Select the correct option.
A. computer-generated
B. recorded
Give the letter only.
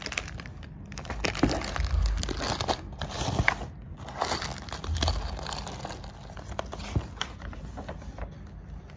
B